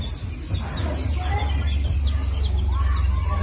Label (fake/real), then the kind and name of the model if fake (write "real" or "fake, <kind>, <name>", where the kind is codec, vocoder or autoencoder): real